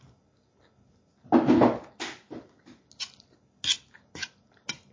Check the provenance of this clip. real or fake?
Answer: real